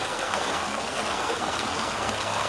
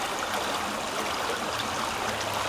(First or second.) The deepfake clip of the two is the first